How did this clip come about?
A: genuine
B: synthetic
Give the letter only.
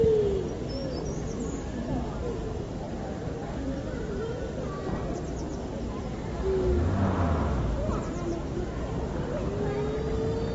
A